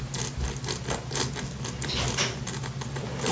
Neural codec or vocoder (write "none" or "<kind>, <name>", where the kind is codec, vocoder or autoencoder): none